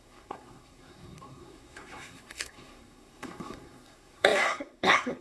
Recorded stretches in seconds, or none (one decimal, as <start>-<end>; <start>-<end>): none

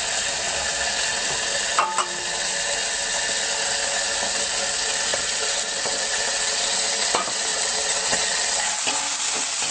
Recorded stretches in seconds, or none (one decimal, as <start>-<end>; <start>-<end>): 0.0-5.1; 6.8-7.5; 8.4-9.7

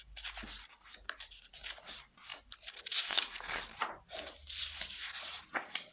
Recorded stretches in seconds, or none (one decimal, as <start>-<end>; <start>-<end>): 0.0-5.9

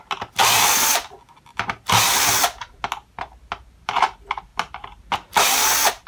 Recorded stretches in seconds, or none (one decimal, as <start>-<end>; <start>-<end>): 0.0-6.1